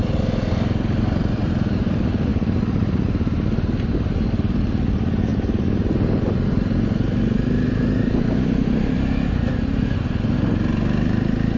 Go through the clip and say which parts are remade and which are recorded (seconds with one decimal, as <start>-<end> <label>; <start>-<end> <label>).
0.0-11.6 recorded